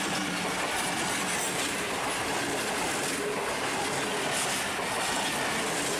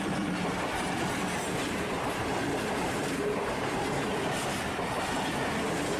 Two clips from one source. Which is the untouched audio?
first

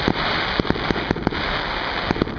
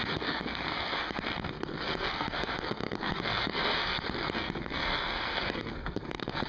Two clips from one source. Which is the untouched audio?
first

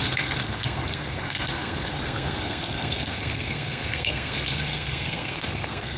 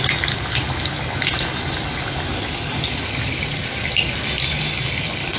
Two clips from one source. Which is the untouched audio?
second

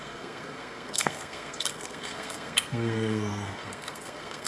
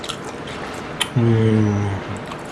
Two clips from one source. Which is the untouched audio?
second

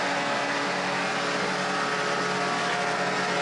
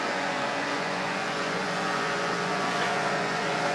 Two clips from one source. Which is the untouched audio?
first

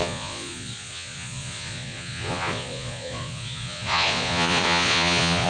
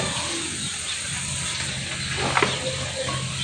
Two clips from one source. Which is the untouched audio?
second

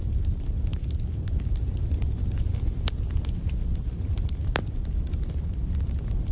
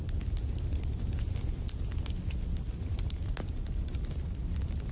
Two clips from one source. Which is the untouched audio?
second